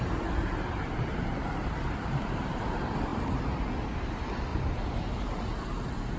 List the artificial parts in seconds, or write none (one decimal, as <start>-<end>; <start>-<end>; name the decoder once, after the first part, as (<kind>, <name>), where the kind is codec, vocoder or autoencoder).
0.4-2.6 (vocoder, BigVGAN v2); 3.1-3.7; 4.5-5.1